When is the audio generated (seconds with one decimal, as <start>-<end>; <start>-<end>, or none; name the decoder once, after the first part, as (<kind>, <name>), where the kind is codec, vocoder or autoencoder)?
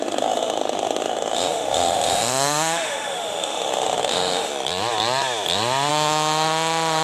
0.0-4.5 (autoencoder, DAC-VAE); 5.9-7.0